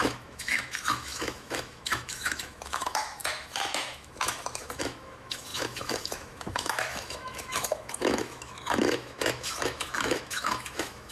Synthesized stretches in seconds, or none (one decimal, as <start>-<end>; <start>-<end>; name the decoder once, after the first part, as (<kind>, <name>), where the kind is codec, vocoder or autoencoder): 0.0-11.1 (autoencoder, DAC-VAE)